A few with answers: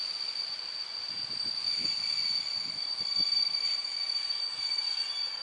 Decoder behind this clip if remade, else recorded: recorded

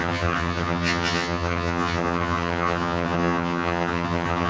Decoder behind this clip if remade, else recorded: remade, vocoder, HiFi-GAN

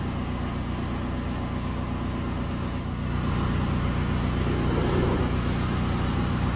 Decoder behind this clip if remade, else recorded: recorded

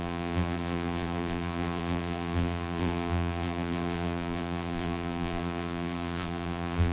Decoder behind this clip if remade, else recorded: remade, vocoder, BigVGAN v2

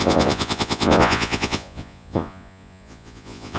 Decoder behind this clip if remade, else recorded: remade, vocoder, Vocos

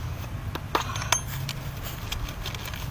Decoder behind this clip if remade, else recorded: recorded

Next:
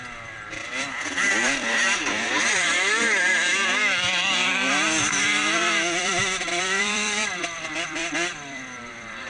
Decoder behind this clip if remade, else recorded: remade, vocoder, BigVGAN v2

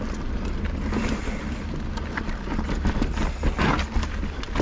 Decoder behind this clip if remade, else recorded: recorded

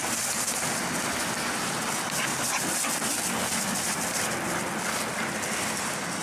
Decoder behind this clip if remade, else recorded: recorded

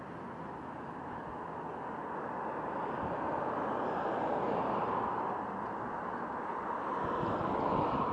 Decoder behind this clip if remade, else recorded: recorded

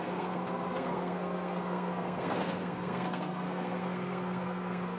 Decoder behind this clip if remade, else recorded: remade, codec, SNAC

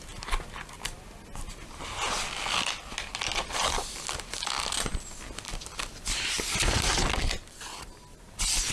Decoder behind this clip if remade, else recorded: recorded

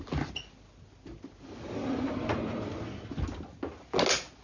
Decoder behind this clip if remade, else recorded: recorded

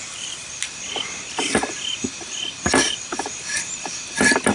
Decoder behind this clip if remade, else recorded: remade, vocoder, BigVGAN v2